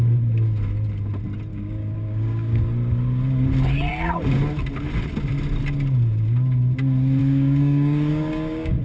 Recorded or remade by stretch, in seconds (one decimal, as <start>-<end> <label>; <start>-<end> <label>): 0.0-1.5 recorded; 1.5-2.6 remade; 2.6-7.2 recorded; 7.2-8.8 remade